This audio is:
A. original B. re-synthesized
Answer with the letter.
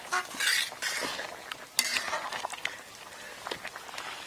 A